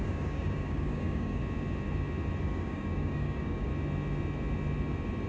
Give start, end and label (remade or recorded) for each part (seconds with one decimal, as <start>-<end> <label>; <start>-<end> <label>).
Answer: 0.0-1.4 remade; 1.4-2.4 recorded; 2.4-3.7 remade; 3.7-5.3 recorded